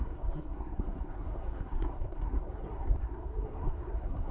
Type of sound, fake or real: fake